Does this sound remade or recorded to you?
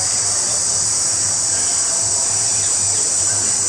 remade